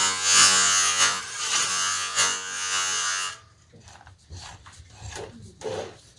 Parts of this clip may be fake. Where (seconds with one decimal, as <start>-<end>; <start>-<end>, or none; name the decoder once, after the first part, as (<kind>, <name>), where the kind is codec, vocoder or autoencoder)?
0.0-1.2 (vocoder, Vocos); 1.7-3.3

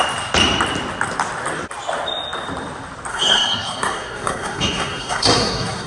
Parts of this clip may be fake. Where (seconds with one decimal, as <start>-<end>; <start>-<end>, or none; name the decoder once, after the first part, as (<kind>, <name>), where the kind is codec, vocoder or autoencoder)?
3.1-5.9 (codec, SNAC)

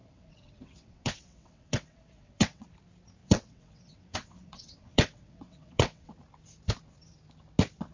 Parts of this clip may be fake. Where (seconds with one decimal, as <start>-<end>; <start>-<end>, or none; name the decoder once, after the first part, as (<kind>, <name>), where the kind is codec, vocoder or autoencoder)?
0.0-2.7 (vocoder, WaveNeXt); 3.2-6.1

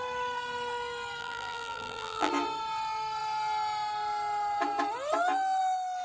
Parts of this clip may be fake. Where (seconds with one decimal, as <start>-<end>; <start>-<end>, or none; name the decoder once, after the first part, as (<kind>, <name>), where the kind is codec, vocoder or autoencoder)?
1.2-2.3 (vocoder, BigVGAN v2)

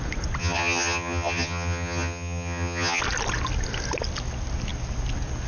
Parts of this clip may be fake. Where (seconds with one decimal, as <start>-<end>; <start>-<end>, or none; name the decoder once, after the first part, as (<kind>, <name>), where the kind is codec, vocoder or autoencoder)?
0.4-3.0 (vocoder, HiFi-GAN)